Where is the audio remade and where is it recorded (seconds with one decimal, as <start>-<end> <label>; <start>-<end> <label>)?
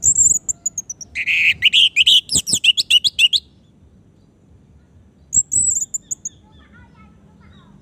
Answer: 0.0-7.8 recorded